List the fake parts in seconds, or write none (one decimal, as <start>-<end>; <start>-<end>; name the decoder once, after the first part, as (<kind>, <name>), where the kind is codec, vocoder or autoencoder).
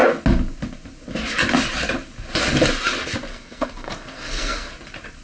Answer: 3.3-4.7 (codec, SNAC)